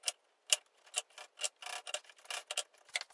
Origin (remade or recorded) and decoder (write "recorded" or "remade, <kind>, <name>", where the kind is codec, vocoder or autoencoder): recorded